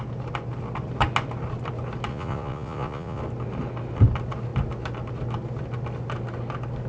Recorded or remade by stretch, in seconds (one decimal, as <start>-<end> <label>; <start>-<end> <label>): 0.0-2.1 recorded; 2.1-3.2 remade; 3.2-6.9 recorded